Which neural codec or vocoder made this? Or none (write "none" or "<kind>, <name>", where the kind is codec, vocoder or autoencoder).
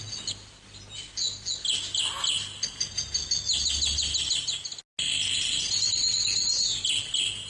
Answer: none